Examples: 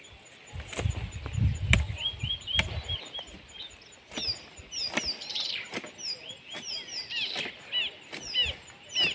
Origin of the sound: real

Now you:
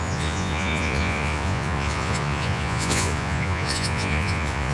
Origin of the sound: fake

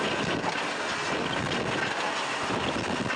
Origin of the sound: real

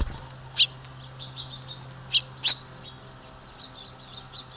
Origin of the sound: real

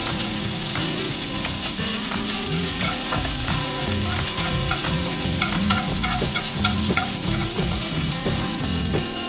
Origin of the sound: fake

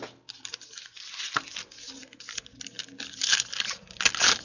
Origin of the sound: real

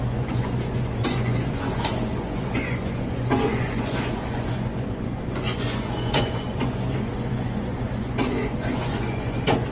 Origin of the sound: fake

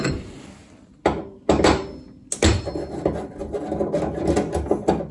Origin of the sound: real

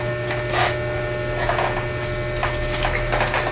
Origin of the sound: real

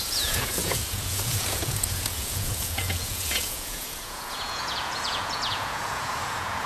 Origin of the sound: fake